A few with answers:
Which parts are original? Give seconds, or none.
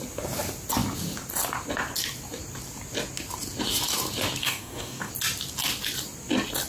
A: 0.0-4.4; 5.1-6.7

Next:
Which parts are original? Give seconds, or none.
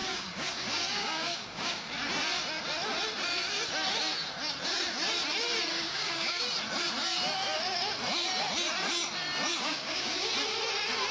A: 1.9-5.7; 6.4-9.5; 10.3-11.1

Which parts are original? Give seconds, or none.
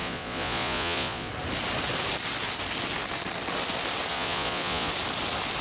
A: 1.3-4.1; 4.9-5.6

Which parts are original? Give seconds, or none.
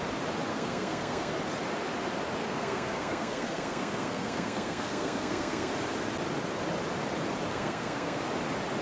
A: 0.0-0.5; 1.3-2.4; 5.7-7.5; 8.2-8.8